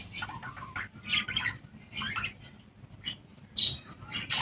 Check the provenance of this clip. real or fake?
real